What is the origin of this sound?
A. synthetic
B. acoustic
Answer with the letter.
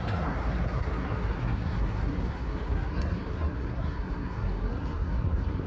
A